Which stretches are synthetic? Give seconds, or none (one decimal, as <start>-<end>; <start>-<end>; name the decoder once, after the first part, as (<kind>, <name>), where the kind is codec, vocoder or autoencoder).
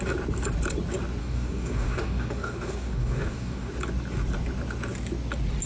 1.2-3.7 (codec, DAC)